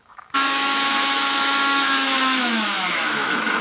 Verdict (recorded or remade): remade